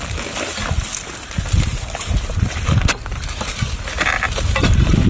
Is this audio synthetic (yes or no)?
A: no